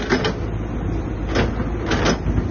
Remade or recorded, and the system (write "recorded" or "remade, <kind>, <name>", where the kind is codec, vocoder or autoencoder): recorded